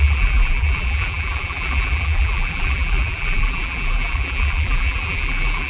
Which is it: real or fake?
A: fake